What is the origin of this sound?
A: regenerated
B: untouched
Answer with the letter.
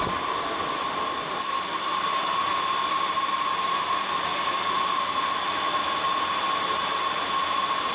B